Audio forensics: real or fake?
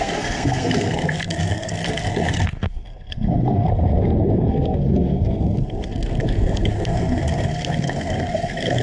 fake